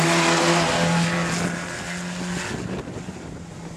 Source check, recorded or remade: recorded